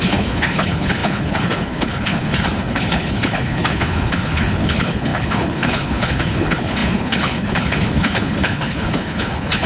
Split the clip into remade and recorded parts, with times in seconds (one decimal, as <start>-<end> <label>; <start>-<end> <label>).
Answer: 0.0-9.7 remade